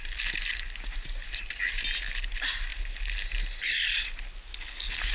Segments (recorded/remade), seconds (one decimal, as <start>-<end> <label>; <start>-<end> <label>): 0.0-4.5 recorded; 4.5-5.1 remade